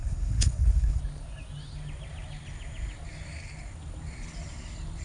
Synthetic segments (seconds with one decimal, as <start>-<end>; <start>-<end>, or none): 0.0-1.0